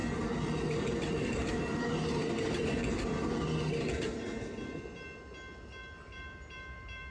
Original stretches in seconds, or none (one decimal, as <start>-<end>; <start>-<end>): 3.9-5.8